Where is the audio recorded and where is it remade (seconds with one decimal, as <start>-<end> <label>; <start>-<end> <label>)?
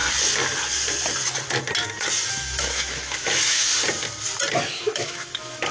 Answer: 0.0-2.3 recorded; 2.3-3.7 remade; 3.7-4.7 recorded; 4.7-5.7 remade